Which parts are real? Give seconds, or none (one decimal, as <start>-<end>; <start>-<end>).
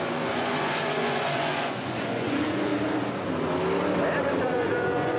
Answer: 2.7-4.2